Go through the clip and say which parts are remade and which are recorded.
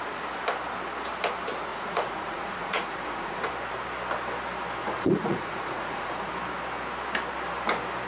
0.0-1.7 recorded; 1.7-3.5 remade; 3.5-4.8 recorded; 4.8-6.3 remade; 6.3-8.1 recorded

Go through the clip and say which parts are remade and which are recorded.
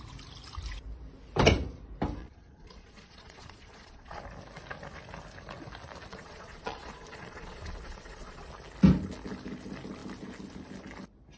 0.0-2.2 recorded; 2.2-4.2 remade; 4.2-6.1 recorded; 6.1-8.5 remade; 8.5-11.4 recorded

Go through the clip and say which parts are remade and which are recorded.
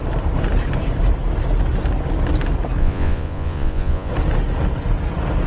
0.0-2.8 recorded; 2.8-4.1 remade; 4.1-5.5 recorded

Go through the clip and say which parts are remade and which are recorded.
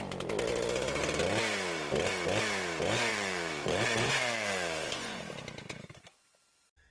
0.0-3.1 recorded; 3.1-5.2 remade; 5.2-6.9 recorded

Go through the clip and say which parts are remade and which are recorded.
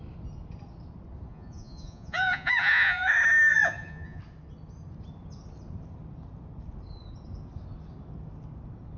0.0-1.3 recorded; 1.3-3.1 remade; 3.1-3.5 recorded; 3.5-4.2 remade; 4.2-9.0 recorded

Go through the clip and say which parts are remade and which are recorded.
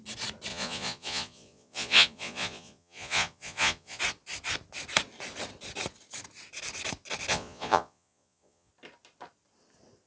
0.0-0.5 recorded; 0.5-4.0 remade; 4.0-7.3 recorded; 7.3-8.7 remade; 8.7-10.1 recorded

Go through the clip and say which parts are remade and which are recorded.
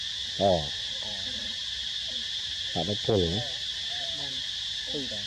0.0-5.3 recorded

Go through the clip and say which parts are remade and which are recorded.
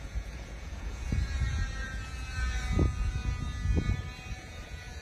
0.0-3.2 remade; 3.2-4.3 recorded; 4.3-5.0 remade